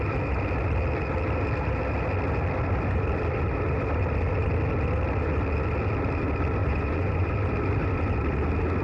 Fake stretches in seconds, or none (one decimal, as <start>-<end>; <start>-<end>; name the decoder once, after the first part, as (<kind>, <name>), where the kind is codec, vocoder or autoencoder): 6.6-7.3 (vocoder, Vocos)